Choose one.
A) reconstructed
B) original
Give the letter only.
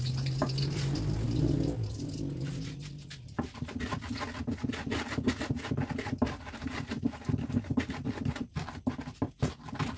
B